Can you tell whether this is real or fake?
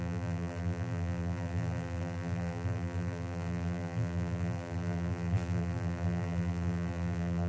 fake